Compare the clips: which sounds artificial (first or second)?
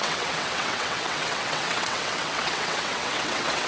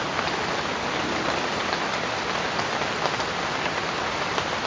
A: first